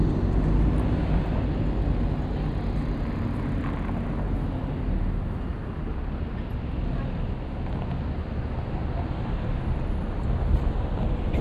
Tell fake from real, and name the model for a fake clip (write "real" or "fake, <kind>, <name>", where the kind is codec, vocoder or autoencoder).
real